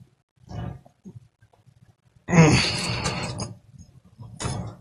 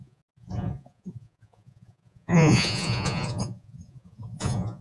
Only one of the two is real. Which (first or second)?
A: first